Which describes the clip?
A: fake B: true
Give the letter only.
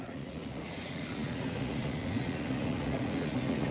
A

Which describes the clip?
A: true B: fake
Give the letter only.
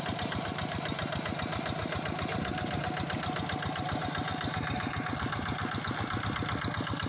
A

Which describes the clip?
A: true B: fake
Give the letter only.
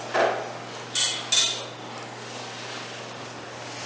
A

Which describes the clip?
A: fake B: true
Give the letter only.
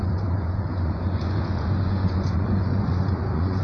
A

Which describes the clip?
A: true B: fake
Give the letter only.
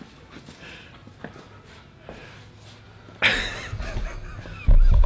A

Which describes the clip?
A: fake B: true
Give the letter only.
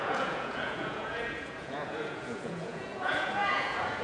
A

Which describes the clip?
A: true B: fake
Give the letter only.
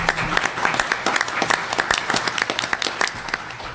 A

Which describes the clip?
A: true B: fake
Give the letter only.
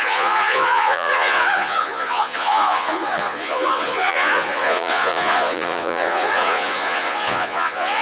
B